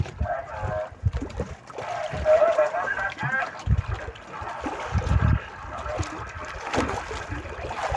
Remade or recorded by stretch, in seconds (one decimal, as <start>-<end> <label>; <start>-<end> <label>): 0.0-8.0 recorded